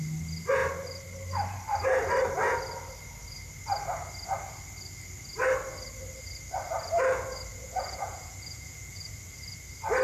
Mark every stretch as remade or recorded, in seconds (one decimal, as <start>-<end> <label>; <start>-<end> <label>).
0.0-7.5 recorded; 7.5-9.1 remade; 9.1-10.0 recorded